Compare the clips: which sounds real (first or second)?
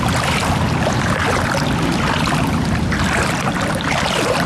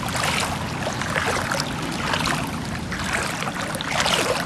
second